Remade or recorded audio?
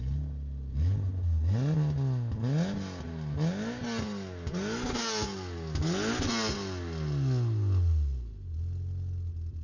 recorded